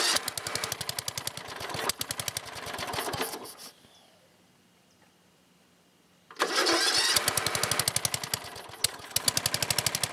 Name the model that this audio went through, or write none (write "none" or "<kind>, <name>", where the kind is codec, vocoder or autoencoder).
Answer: none